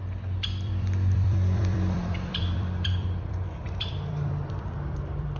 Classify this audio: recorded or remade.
remade